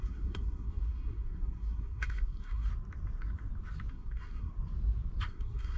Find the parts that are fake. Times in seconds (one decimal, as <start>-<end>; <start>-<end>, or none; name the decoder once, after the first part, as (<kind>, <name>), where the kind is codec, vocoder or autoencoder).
0.0-2.7 (codec, SNAC); 3.9-4.5; 5.3-5.8

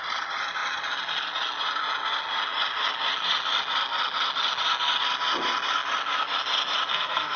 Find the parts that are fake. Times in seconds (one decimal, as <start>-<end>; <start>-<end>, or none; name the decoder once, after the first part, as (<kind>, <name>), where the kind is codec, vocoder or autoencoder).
6.9-7.4 (codec, SNAC)

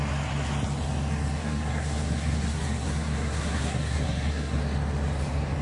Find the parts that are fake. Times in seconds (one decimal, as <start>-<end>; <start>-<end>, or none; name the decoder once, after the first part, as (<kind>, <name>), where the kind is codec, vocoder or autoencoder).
1.4-4.6 (codec, SNAC)